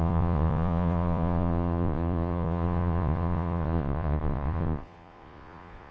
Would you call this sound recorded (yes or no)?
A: no